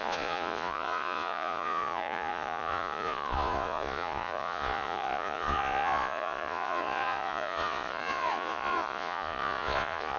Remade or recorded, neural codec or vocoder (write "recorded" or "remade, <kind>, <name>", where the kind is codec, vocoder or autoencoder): remade, vocoder, Vocos